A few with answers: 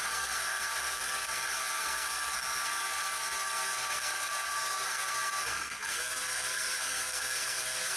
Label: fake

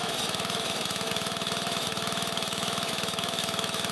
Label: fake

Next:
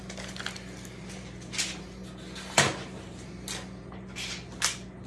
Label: real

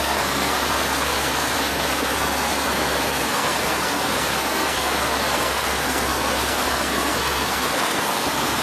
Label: fake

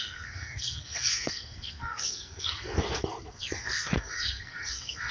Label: fake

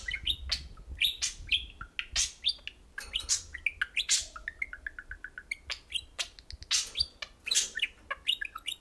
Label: real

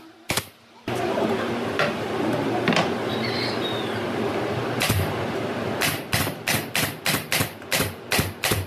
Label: real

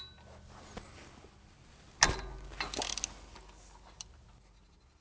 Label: real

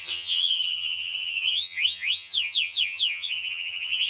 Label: fake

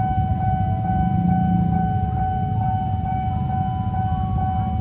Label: real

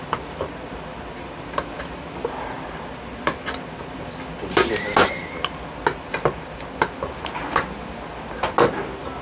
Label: real